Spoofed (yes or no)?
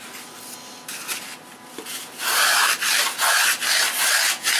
no